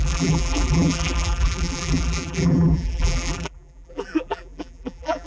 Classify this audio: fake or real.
fake